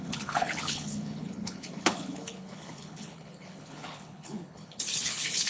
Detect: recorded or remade remade